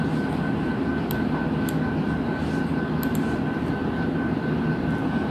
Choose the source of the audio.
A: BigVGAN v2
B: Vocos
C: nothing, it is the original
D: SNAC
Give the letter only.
C